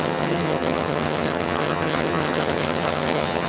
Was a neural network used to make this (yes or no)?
yes